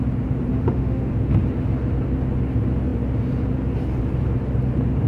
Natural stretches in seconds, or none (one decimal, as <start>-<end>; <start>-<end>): 0.0-0.5; 1.1-5.1